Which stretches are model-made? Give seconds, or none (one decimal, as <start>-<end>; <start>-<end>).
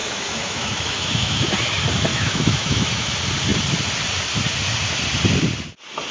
0.0-1.5; 2.1-3.1